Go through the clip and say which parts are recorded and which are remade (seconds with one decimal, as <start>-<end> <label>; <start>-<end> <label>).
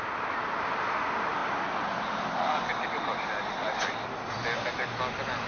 0.0-5.5 recorded